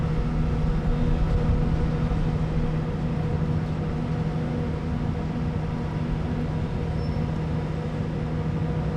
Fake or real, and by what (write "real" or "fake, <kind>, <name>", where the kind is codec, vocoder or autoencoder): real